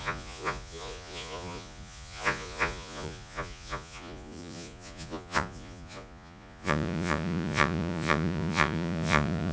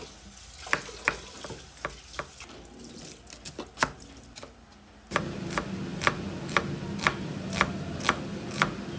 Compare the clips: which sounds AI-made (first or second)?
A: first